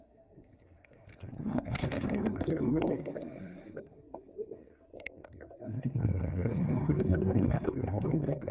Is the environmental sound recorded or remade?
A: remade